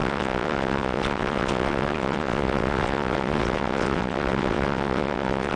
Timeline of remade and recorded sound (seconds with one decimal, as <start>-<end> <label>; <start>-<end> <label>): 0.0-5.6 remade